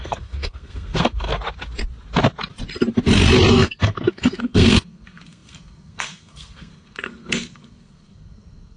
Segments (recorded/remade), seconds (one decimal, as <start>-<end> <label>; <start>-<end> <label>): 0.0-1.3 remade; 1.3-3.5 recorded; 3.5-8.8 remade